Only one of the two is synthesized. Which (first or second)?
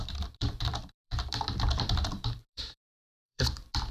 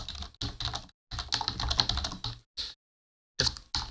first